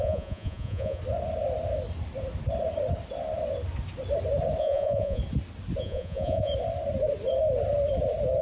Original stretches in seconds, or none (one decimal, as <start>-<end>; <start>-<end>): 1.0-4.6; 5.2-5.8; 6.5-8.4